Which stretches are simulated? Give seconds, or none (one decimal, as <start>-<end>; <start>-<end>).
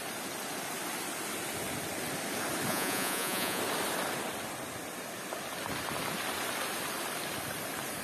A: 2.7-3.6